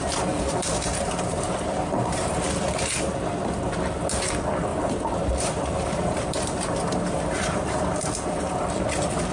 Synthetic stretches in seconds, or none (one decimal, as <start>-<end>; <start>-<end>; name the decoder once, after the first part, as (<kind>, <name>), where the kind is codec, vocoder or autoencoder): 0.0-2.3 (vocoder, BigVGAN v2); 4.7-7.8